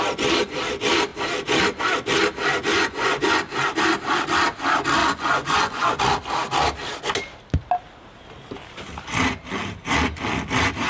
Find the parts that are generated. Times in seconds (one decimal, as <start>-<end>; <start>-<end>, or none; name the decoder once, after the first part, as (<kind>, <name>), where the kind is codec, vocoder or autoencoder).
2.7-3.3 (vocoder, Vocos); 5.0-6.0